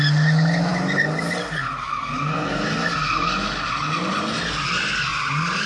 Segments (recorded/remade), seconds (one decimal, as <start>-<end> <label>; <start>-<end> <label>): 0.0-5.7 recorded